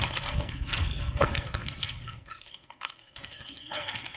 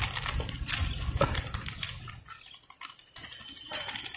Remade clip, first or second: first